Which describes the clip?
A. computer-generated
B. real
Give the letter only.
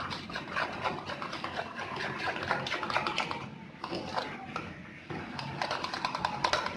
B